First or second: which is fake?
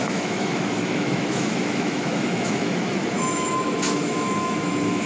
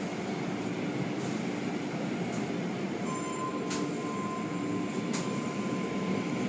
first